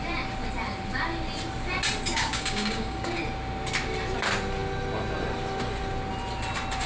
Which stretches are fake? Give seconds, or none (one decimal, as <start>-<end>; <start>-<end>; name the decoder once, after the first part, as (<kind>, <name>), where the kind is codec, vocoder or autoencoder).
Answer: 2.1-3.2 (codec, DAC)